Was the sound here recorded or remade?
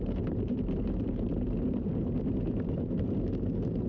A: recorded